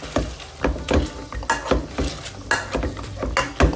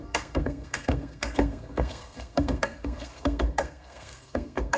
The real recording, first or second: first